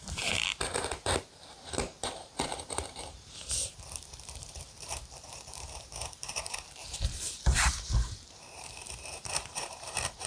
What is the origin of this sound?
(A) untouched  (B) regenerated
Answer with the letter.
B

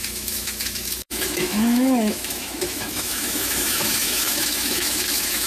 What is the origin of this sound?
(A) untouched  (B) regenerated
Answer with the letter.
B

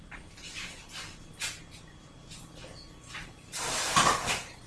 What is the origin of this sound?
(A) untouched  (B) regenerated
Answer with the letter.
B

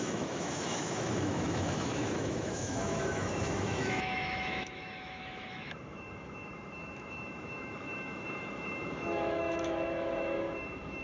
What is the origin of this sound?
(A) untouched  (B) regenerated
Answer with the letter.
B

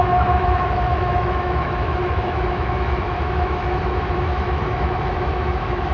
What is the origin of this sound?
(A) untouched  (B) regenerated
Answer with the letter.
B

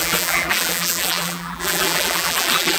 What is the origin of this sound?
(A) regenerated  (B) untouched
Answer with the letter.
A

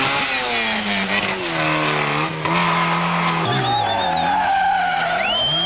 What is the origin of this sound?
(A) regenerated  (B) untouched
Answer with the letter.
B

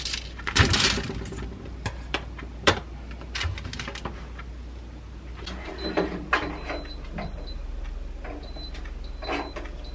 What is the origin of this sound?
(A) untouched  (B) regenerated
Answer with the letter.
A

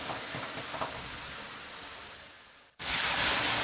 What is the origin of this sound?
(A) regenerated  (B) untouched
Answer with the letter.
A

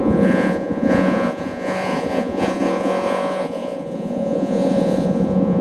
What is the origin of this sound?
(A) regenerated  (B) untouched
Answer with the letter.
A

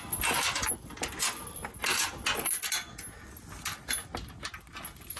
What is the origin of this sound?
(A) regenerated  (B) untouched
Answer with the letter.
B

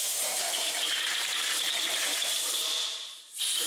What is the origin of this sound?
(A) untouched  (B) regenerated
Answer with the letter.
B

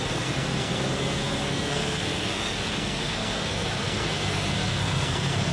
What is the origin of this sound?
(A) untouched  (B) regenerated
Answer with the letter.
B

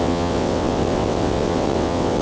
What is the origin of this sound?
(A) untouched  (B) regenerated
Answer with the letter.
B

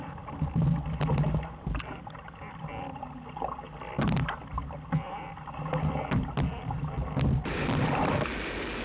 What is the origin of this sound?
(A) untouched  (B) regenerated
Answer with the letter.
A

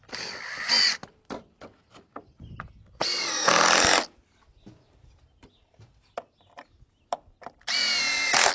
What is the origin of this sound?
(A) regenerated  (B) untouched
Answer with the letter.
B